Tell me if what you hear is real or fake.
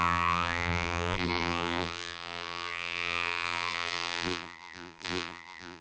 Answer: fake